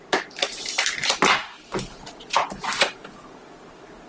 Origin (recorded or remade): recorded